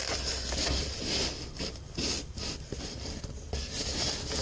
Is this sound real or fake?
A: real